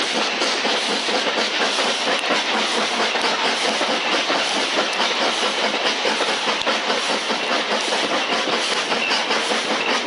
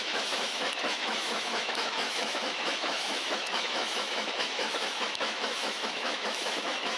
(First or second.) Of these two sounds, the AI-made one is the second